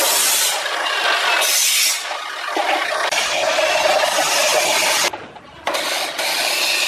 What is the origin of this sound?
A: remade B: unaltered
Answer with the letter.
B